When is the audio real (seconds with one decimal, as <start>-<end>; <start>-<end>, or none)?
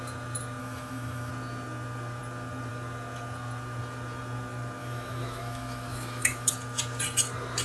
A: 0.0-0.6; 1.3-4.8; 6.5-7.6